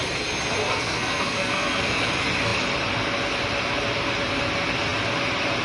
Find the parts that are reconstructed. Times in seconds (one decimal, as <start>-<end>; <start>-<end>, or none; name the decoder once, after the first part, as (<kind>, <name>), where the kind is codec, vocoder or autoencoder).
0.6-2.1 (codec, SNAC)